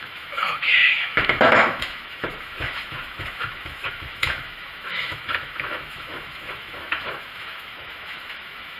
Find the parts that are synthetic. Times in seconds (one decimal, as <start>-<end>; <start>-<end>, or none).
0.0-8.8